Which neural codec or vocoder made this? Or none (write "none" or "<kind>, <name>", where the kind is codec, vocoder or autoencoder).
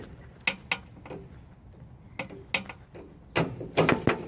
none